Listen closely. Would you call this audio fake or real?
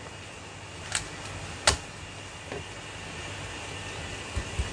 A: real